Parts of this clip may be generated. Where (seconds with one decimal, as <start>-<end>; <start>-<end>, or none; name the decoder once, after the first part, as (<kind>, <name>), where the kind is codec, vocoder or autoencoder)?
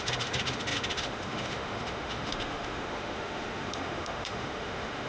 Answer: 0.0-5.1 (autoencoder, DAC-VAE)